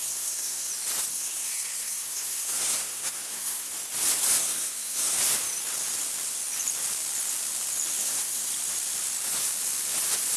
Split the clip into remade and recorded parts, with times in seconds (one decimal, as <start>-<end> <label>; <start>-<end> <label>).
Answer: 0.0-0.7 remade; 0.7-1.1 recorded; 1.1-3.7 remade; 3.7-4.4 recorded; 4.4-5.2 remade; 5.2-8.0 recorded; 8.0-8.5 remade; 8.5-10.4 recorded